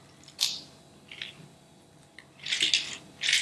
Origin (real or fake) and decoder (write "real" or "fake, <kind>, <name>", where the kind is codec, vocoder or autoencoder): real